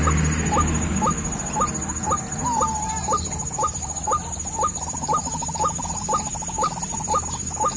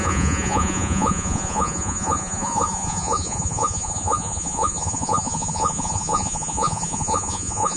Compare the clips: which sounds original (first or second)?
first